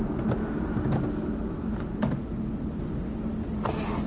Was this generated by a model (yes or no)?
no